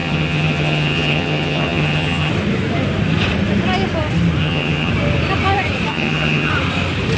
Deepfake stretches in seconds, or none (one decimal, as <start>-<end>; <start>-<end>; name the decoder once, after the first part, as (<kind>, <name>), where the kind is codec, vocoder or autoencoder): 0.0-2.3 (vocoder, HiFi-GAN); 4.4-4.9; 5.9-6.5